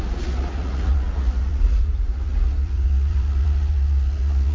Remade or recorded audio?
remade